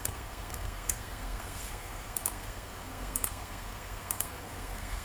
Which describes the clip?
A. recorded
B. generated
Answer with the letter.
B